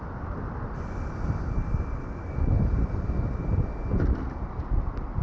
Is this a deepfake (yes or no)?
no